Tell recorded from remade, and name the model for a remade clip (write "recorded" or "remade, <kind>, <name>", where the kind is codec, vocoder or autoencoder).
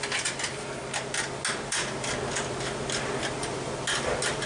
recorded